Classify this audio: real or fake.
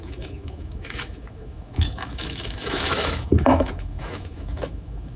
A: fake